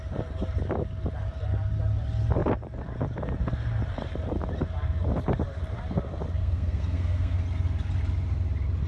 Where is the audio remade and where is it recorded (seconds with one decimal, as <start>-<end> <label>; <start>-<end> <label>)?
0.0-6.4 recorded; 6.4-7.4 remade; 7.4-8.9 recorded